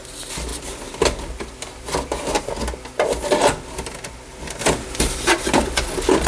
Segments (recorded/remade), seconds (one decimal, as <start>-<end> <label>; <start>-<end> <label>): 0.0-6.3 recorded